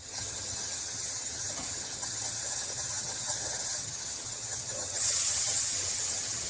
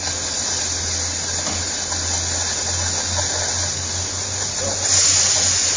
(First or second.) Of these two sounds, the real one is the second